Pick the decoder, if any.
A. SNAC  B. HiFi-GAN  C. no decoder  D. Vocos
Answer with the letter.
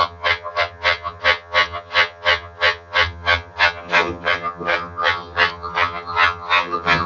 B